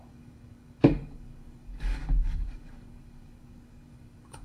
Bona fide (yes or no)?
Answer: no